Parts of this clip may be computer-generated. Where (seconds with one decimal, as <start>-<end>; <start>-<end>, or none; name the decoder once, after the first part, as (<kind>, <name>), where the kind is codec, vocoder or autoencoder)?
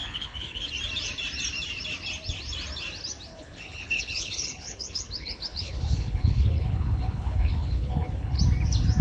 0.0-0.7 (codec, HILCodec); 3.3-8.4